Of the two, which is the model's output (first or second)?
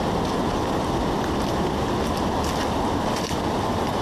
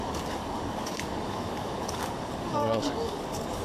second